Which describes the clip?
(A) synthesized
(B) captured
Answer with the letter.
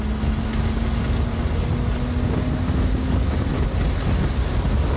B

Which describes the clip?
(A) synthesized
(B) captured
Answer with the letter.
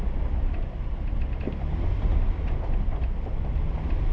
B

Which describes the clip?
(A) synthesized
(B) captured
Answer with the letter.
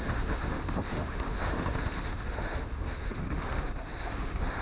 A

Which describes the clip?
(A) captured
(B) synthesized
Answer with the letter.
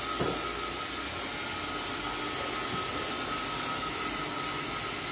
A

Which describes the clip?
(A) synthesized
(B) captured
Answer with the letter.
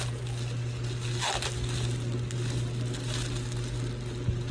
B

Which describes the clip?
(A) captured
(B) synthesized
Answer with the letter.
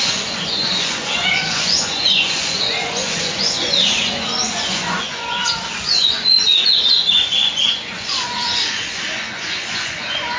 B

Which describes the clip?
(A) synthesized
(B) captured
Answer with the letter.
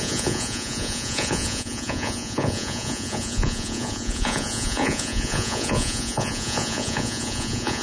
A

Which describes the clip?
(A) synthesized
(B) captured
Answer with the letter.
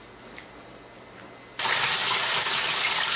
B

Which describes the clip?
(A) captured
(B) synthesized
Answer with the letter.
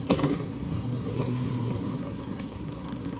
B